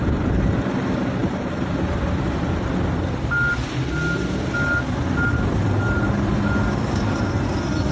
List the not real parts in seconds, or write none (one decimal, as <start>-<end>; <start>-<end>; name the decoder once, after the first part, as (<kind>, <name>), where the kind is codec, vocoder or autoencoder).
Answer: none